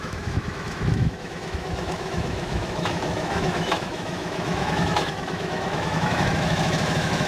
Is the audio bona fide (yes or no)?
no